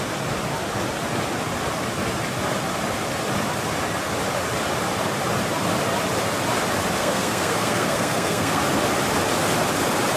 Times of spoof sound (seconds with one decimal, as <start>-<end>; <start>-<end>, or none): 7.0-8.6